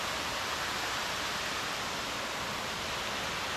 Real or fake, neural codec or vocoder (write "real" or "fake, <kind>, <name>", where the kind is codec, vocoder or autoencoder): real